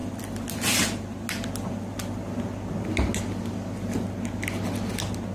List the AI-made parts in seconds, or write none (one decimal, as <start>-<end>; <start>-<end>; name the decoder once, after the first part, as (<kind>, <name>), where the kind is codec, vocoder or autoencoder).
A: none